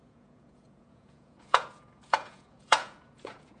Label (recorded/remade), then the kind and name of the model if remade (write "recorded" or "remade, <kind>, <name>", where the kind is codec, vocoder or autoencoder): remade, vocoder, Vocos